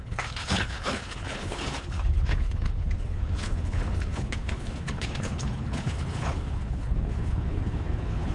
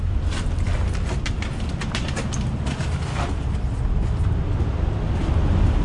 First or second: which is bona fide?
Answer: second